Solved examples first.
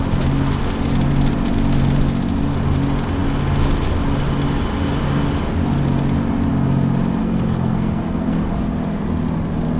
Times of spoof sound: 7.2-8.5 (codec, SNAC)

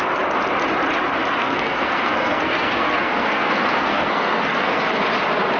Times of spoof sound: 1.4-4.8 (codec, SNAC)

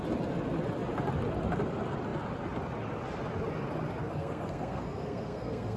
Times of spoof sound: 4.0-5.8 (codec, SNAC)

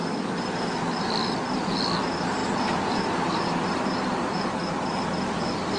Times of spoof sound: none

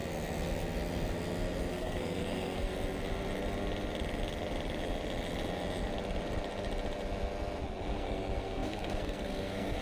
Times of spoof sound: 1.7-2.7 (codec, SNAC); 7.8-9.8

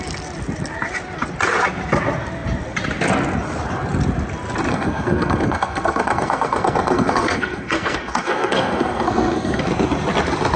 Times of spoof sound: 4.7-9.6 (codec, SNAC)

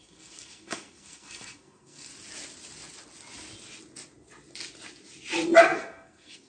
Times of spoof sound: 0.0-2.1 (codec, SNAC); 5.6-6.5

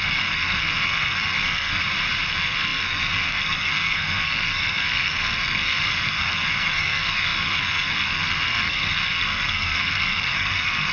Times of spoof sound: 0.0-1.8 (codec, SNAC); 2.3-10.9